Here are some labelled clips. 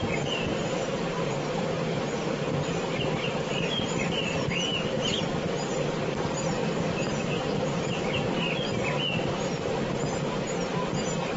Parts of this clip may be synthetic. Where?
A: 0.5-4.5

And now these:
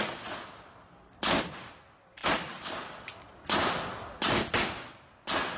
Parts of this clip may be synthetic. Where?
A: none